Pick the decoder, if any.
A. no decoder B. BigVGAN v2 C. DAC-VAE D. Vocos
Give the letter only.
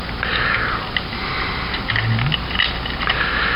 A